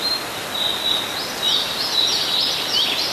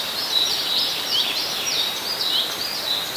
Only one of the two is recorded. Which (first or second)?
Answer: first